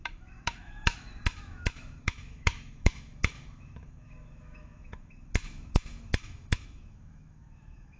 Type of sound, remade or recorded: remade